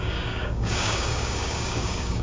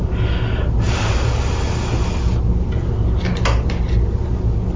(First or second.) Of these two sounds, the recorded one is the second